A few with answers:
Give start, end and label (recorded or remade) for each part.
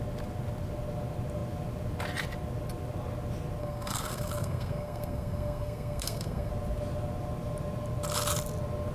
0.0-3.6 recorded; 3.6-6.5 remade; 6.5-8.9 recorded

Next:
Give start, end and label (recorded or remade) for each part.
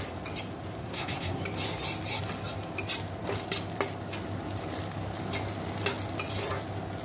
0.0-0.8 recorded; 0.8-1.4 remade; 1.4-7.0 recorded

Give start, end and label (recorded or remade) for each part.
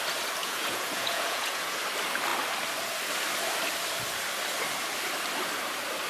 0.0-0.4 recorded; 0.4-1.8 remade; 1.8-6.1 recorded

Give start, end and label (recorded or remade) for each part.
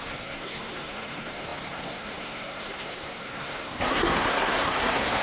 0.0-5.2 remade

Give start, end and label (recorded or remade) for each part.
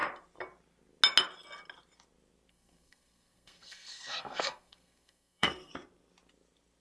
0.0-2.5 recorded; 2.5-5.7 remade; 5.7-6.8 recorded